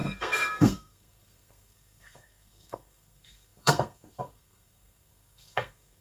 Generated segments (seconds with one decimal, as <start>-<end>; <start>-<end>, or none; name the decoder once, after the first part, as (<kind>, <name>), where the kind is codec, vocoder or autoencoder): 0.0-6.0 (codec, SNAC)